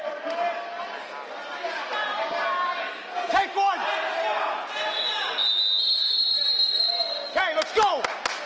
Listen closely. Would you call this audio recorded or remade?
recorded